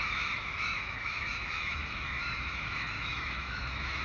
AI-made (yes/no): yes